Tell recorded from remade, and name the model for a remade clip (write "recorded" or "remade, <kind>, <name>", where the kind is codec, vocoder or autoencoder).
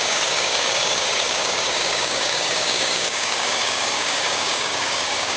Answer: remade, codec, DAC